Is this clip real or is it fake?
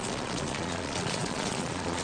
fake